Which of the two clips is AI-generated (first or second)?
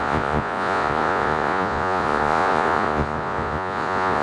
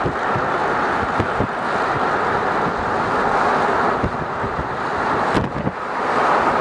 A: first